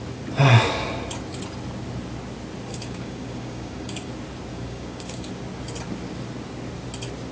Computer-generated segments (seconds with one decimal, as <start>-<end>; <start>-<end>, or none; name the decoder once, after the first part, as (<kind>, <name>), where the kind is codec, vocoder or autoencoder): 2.7-4.1 (codec, DAC); 4.5-5.3